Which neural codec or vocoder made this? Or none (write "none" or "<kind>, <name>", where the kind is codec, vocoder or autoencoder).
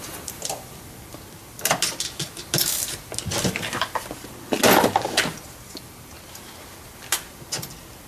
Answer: none